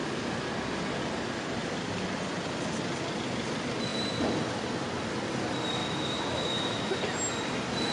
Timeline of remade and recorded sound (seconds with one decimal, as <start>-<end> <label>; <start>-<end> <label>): 0.0-5.8 recorded; 5.8-6.9 remade; 6.9-7.9 recorded